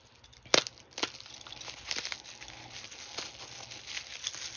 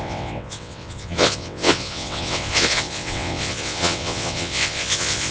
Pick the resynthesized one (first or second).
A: second